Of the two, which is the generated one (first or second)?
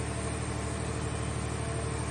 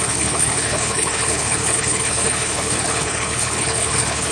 second